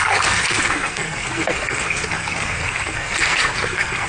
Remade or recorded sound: remade